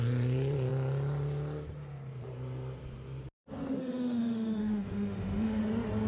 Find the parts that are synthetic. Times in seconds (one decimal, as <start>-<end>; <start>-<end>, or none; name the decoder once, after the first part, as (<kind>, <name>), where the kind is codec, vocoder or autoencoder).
3.8-5.6 (autoencoder, DAC-VAE)